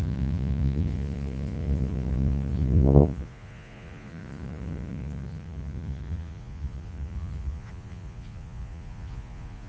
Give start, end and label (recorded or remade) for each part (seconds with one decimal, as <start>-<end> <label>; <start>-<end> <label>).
0.0-9.7 remade